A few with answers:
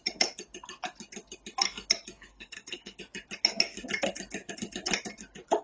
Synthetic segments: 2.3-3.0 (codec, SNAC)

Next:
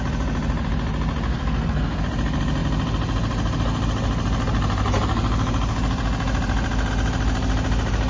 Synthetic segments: 1.3-2.0 (codec, SNAC)

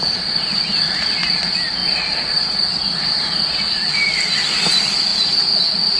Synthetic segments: none

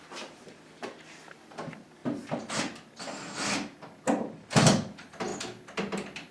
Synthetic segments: none

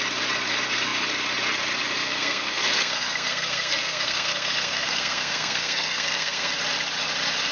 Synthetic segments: 2.0-6.5 (codec, SNAC)

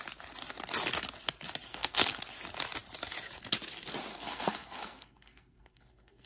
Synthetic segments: 1.7-2.2 (codec, SNAC); 4.1-6.3